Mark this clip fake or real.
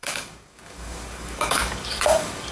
fake